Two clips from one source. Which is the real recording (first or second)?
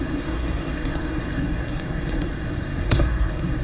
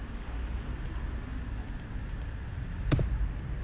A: second